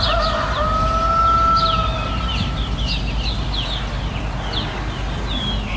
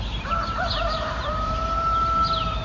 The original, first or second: first